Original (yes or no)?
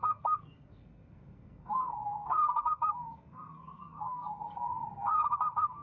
no